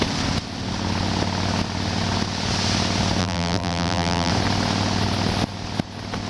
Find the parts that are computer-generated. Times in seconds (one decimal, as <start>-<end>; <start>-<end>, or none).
3.2-4.3